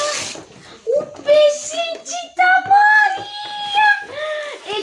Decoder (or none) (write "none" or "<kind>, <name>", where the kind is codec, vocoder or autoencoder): none